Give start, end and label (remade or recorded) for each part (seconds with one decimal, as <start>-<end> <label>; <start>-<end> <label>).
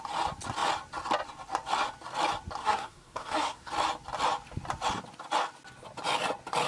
0.0-2.6 recorded; 2.6-3.7 remade; 3.7-6.7 recorded